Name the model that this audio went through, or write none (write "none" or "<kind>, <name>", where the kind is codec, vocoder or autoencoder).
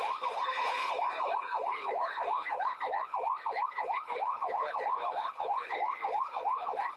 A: codec, HILCodec